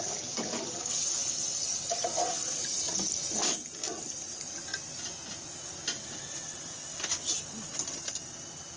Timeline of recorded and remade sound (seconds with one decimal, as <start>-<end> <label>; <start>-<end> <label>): 0.0-8.8 recorded

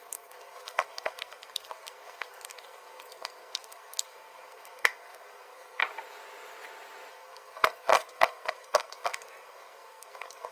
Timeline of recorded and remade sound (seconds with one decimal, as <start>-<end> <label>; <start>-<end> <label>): 0.0-5.8 remade; 5.8-7.1 recorded; 7.1-10.5 remade